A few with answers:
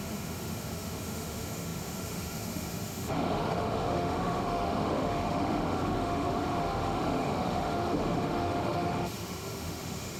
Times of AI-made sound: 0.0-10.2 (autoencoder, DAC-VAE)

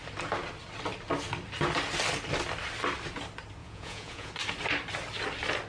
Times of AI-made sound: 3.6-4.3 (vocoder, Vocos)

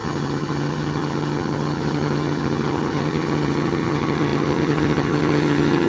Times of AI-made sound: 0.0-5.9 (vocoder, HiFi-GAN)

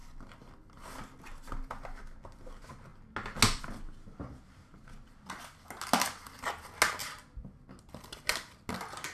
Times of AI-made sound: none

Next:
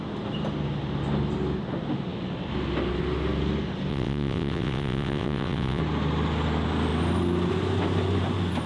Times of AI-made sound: 3.9-5.8 (vocoder, WaveNeXt)